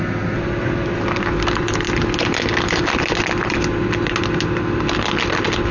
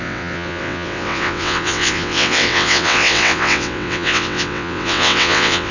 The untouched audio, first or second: first